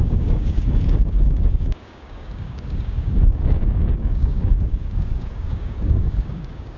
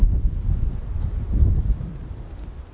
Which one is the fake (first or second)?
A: first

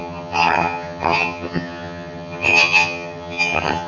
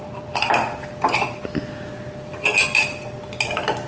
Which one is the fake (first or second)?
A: first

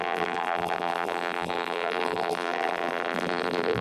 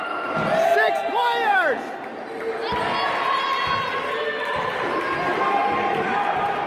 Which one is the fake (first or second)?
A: first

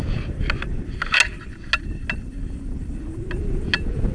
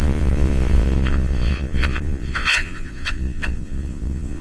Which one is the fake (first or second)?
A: second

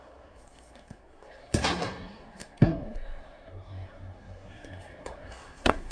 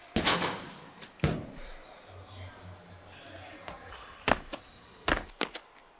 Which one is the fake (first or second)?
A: first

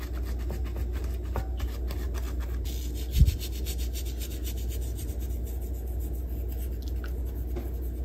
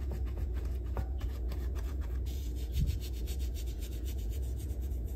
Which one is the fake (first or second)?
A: second